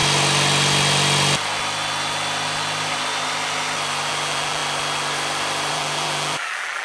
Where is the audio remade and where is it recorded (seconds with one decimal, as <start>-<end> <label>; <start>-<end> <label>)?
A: 0.0-4.1 recorded; 4.1-4.6 remade; 4.6-5.7 recorded; 5.7-6.8 remade

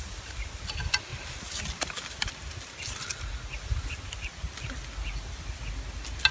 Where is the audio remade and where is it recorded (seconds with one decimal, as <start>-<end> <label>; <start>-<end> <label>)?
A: 0.0-1.1 recorded; 1.1-1.6 remade; 1.6-6.3 recorded

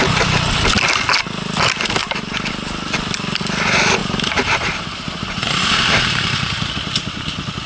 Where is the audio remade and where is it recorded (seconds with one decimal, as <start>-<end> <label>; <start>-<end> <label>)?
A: 0.0-2.0 recorded; 2.0-2.5 remade; 2.5-4.0 recorded; 4.0-6.7 remade; 6.7-7.7 recorded

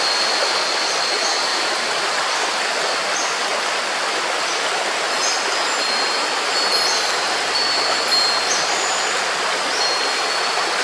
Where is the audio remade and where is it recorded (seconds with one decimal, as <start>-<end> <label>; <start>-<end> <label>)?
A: 0.0-10.8 recorded

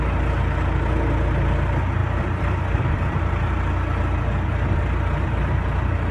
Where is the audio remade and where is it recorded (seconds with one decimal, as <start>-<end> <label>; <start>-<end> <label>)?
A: 0.0-2.0 recorded; 2.0-3.6 remade; 3.6-6.1 recorded

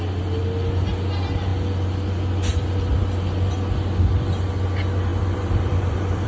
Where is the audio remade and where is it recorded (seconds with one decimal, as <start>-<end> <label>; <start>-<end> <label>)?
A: 0.0-5.1 recorded; 5.1-6.3 remade

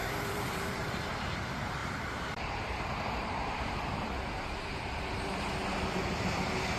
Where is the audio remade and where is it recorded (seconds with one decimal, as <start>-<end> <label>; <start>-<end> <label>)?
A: 0.0-1.3 remade; 1.3-1.8 recorded; 1.8-5.5 remade; 5.5-6.8 recorded